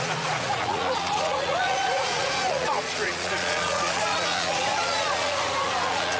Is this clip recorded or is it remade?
remade